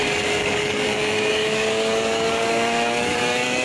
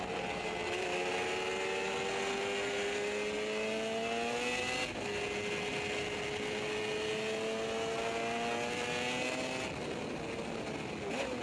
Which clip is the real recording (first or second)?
second